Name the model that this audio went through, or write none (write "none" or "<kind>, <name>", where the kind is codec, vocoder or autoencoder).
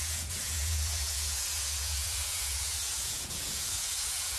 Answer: vocoder, Vocos